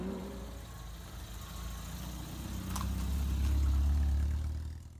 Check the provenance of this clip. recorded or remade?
recorded